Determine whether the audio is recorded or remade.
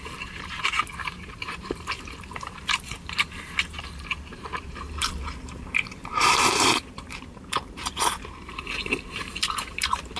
remade